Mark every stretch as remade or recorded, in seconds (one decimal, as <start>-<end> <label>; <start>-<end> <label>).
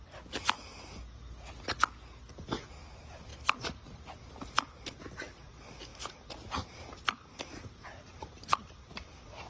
0.0-9.5 recorded